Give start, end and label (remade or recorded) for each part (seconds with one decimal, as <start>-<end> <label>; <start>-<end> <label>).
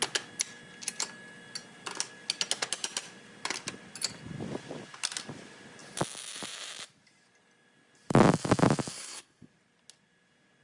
0.0-8.9 recorded; 8.9-9.5 remade; 9.5-10.6 recorded